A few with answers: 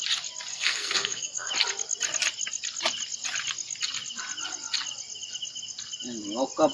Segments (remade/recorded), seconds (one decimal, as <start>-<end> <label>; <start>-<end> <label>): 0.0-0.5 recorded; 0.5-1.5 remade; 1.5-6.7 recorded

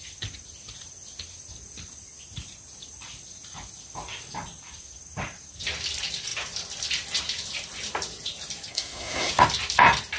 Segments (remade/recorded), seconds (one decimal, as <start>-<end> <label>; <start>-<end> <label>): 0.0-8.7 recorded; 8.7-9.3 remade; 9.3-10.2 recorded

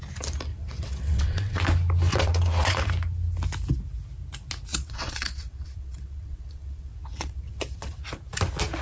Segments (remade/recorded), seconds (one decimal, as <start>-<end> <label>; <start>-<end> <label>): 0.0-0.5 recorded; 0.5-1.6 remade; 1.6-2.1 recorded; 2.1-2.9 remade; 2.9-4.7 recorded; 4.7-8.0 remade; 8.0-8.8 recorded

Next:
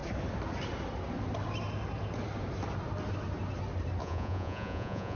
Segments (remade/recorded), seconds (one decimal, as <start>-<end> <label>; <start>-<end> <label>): 0.0-4.0 recorded; 4.0-5.2 remade

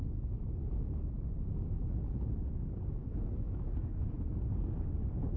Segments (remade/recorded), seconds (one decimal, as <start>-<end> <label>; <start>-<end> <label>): 0.0-3.0 recorded; 3.0-4.3 remade; 4.3-5.4 recorded

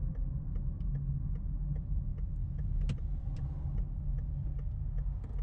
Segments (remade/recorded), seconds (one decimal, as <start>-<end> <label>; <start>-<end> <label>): 0.0-5.4 recorded